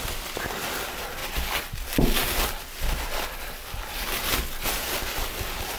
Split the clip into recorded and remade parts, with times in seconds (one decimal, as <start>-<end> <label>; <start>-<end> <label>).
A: 0.0-5.8 recorded